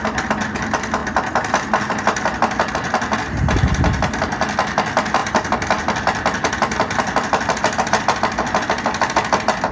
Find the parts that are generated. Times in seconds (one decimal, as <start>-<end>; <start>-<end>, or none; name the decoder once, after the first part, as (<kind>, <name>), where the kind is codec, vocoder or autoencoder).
none